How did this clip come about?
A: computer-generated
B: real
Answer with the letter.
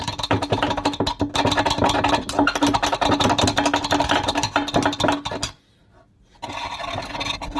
B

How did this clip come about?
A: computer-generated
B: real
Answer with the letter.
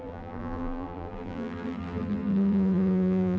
A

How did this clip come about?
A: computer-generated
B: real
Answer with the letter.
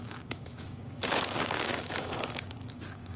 A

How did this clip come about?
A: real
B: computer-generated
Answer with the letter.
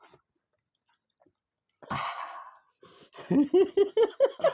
A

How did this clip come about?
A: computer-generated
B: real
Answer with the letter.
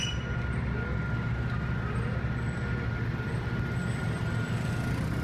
B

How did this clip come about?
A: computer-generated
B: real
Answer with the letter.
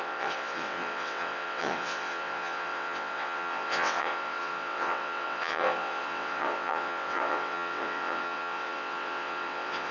A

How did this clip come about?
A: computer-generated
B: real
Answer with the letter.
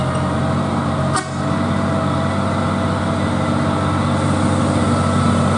B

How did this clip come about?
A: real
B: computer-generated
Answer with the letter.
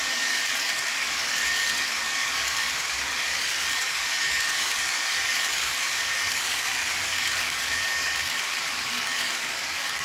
B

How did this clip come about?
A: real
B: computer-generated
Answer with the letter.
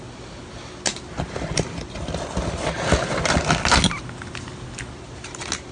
A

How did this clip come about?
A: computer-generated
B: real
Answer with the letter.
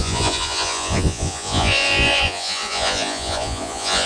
A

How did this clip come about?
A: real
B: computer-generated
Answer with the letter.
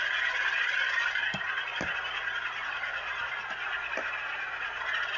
A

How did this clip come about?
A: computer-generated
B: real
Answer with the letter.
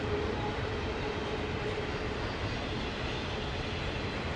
B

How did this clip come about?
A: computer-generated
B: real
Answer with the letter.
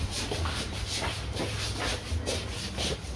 B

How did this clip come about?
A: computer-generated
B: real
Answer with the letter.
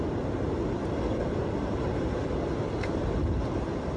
B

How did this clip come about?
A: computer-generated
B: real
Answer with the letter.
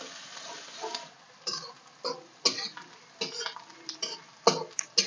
B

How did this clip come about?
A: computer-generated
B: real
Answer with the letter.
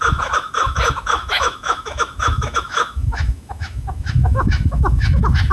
A